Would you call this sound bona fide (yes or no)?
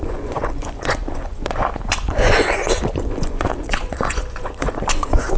no